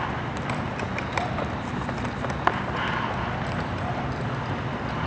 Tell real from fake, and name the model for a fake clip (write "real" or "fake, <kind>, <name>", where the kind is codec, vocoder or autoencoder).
real